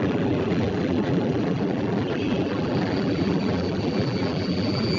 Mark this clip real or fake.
fake